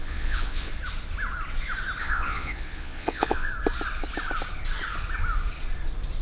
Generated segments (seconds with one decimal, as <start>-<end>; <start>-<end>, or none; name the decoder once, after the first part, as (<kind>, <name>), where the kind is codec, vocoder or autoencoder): 0.0-0.7 (vocoder, Vocos); 2.0-3.5